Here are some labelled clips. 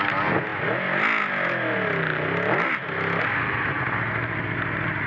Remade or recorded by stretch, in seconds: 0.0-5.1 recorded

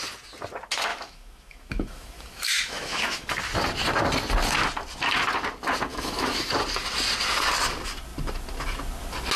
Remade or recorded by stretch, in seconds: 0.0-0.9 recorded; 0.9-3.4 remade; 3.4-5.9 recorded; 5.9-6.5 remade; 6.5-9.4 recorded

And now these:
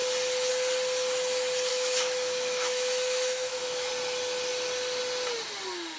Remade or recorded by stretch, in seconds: 0.0-1.7 recorded; 1.7-3.9 remade; 3.9-6.0 recorded

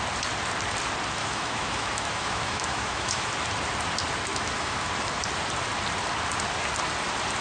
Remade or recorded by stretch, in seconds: 0.0-1.2 recorded; 1.2-3.3 remade; 3.3-4.3 recorded; 4.3-4.9 remade; 4.9-7.4 recorded

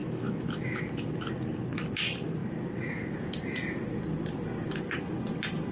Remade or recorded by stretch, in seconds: 0.0-0.8 remade; 0.8-5.7 recorded

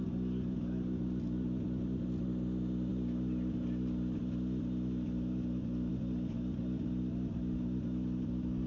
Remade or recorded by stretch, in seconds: 0.0-8.7 recorded